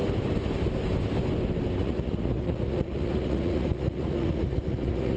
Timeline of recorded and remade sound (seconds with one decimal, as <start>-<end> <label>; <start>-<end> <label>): 0.0-1.8 recorded; 1.8-5.2 remade